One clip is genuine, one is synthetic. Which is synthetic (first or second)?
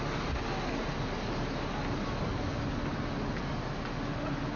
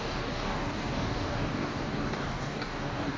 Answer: second